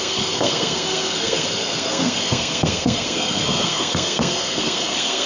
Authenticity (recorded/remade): remade